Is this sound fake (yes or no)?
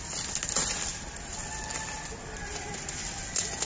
no